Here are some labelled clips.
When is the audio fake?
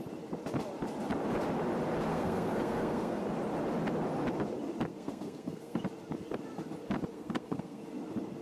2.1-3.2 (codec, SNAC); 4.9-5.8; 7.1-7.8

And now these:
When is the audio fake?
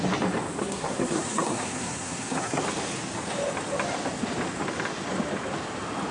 0.6-2.6 (codec, SNAC)